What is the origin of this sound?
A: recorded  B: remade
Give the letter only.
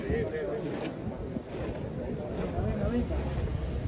A